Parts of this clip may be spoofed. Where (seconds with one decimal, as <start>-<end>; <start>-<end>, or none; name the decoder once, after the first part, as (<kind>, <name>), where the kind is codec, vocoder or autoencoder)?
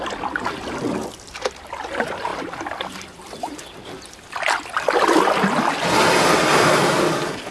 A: 2.3-6.8 (vocoder, BigVGAN v2)